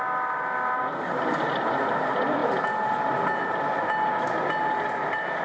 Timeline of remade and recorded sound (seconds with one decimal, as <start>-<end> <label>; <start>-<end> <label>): 0.0-5.4 recorded